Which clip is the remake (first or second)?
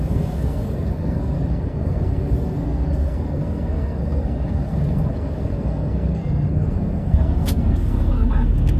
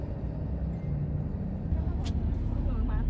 first